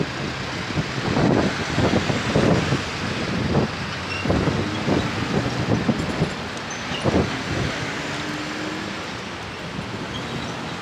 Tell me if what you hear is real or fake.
real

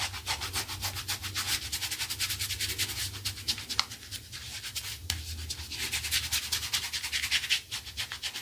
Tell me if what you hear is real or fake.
real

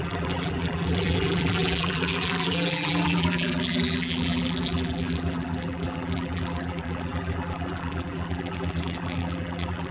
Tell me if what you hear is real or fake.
fake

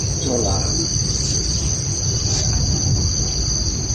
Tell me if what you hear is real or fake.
real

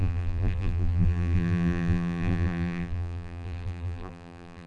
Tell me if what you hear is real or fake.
fake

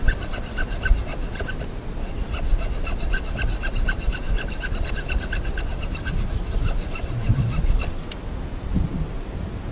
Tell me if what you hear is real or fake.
real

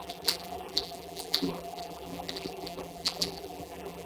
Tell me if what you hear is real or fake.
fake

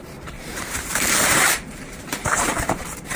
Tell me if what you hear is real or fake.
fake